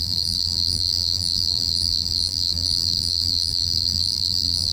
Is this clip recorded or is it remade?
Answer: remade